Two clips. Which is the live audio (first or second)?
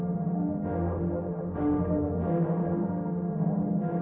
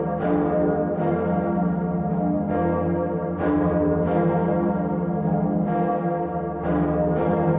second